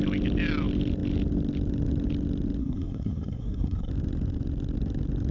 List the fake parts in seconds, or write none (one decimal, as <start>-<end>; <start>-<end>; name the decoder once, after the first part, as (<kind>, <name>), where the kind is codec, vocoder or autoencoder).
2.6-3.9 (codec, SNAC)